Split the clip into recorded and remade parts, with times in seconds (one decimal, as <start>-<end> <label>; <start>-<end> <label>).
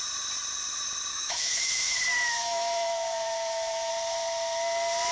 0.0-1.1 recorded; 1.1-2.0 remade; 2.0-2.4 recorded; 2.4-3.9 remade; 3.9-5.1 recorded